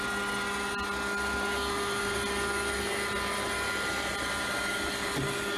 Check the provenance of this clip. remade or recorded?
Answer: recorded